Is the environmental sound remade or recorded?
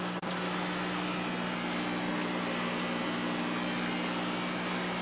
recorded